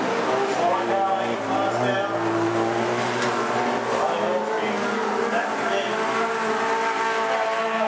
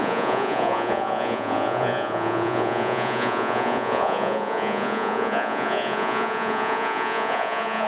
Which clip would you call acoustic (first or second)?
first